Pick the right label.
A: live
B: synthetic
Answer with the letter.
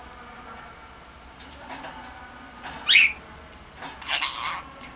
A